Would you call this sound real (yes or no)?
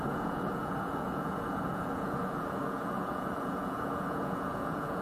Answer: no